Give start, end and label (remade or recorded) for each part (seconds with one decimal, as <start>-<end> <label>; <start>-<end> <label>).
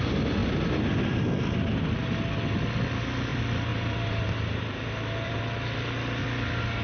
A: 0.0-3.7 recorded; 3.7-5.4 remade; 5.4-6.8 recorded